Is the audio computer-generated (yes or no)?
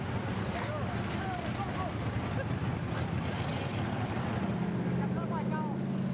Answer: no